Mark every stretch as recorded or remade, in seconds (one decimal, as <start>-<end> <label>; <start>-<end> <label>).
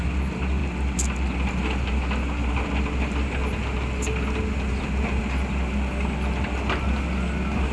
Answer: 0.0-7.7 recorded